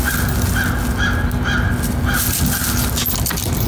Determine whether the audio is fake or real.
real